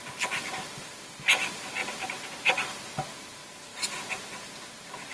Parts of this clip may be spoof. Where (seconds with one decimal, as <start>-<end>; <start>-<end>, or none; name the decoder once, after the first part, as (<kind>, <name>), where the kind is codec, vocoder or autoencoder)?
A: none